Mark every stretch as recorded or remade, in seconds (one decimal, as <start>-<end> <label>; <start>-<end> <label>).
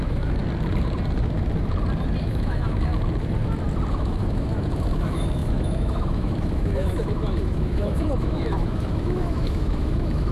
0.0-0.4 remade; 0.4-2.2 recorded; 2.2-2.9 remade; 2.9-3.9 recorded; 3.9-10.3 remade